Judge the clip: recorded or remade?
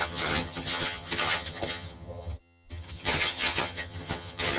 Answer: remade